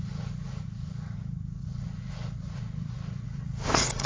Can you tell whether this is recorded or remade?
remade